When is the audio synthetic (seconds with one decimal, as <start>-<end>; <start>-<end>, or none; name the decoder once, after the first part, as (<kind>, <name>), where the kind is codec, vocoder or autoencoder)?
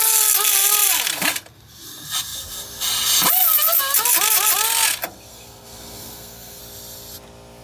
5.3-6.6 (codec, SNAC)